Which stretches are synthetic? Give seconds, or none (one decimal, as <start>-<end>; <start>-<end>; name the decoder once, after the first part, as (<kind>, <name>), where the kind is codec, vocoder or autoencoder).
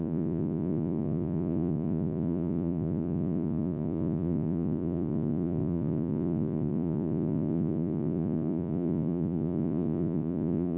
0.0-10.8 (vocoder, Vocos)